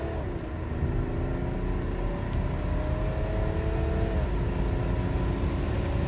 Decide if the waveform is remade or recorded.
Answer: recorded